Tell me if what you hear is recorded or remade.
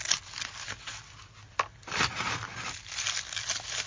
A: recorded